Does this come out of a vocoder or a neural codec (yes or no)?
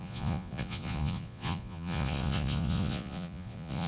yes